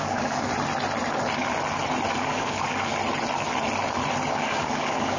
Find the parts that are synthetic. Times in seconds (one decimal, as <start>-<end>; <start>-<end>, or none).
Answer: 0.0-0.5; 2.1-2.9; 4.3-5.2